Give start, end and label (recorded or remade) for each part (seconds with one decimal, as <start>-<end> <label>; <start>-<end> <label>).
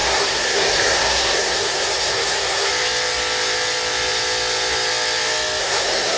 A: 0.0-2.7 remade; 2.7-5.6 recorded; 5.6-6.2 remade